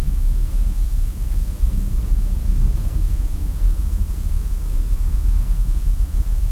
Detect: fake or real fake